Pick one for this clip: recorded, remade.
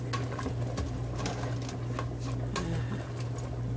recorded